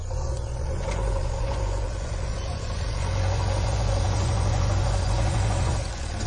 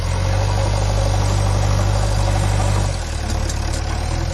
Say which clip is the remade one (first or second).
first